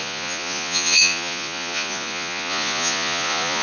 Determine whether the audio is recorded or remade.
remade